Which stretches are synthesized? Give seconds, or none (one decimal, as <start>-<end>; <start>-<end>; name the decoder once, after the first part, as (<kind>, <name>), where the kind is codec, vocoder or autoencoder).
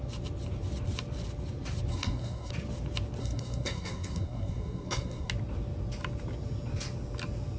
1.9-2.5 (codec, SNAC); 3.2-5.3